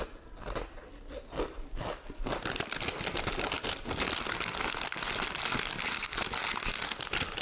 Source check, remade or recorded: recorded